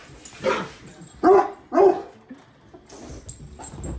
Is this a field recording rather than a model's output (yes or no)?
yes